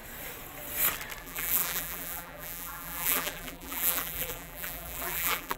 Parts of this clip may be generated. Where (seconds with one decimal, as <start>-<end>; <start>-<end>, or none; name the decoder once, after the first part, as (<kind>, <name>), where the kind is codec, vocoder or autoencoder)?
1.2-5.6 (vocoder, BigVGAN v2)